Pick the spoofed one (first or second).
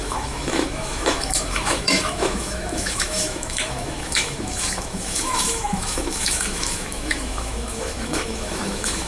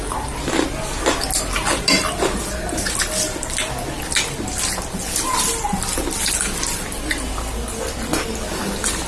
first